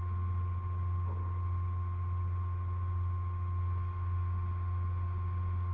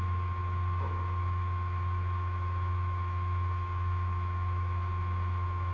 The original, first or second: first